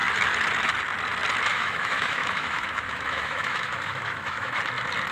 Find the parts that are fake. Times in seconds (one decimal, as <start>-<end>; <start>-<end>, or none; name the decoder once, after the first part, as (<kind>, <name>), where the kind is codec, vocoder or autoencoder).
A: 1.5-4.6 (autoencoder, DAC-VAE)